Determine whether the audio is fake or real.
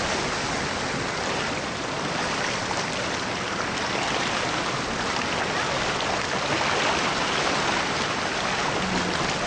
real